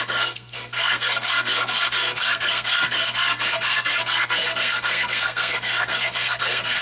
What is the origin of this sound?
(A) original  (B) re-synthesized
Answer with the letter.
B